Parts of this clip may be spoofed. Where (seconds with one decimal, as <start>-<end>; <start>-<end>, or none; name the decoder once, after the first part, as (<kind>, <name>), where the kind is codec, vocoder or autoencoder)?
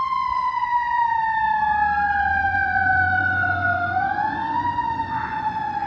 0.0-1.0 (vocoder, Vocos); 2.2-5.9